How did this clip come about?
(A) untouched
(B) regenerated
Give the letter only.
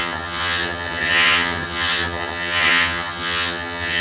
B